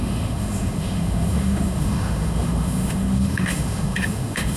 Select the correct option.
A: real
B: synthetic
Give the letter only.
B